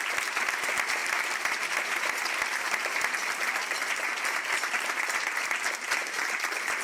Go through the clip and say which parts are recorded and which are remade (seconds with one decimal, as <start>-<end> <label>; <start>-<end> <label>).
0.0-1.0 recorded; 1.0-2.8 remade; 2.8-6.0 recorded; 6.0-6.8 remade